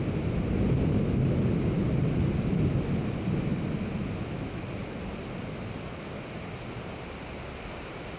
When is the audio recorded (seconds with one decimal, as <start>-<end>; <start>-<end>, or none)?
0.0-8.2